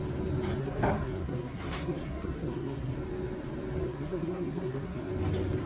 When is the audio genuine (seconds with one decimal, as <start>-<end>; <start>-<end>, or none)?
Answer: 0.0-0.6; 2.9-3.8; 5.1-5.7